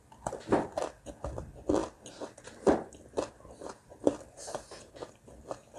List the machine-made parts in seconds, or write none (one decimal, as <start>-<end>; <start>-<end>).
none